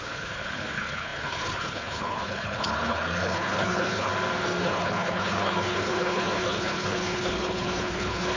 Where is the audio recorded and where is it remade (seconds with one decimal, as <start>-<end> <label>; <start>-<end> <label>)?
0.0-4.1 remade; 4.1-4.6 recorded; 4.6-8.4 remade